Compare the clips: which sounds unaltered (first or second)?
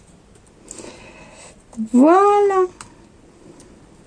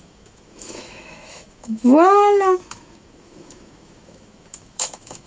first